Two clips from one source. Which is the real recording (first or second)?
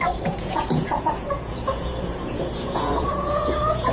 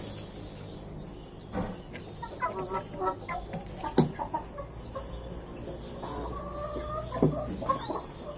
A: second